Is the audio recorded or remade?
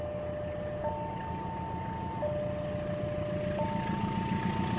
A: recorded